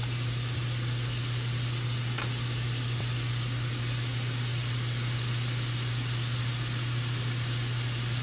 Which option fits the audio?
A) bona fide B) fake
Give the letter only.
A